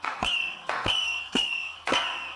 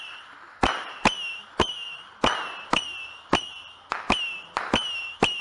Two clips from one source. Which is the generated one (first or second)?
first